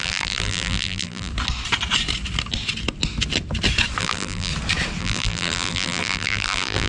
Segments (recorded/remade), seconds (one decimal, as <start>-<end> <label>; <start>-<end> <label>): 0.0-1.3 remade; 1.3-4.0 recorded; 4.0-4.5 remade; 4.5-5.0 recorded; 5.0-6.9 remade